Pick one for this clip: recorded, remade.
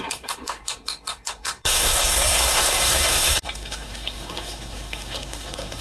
remade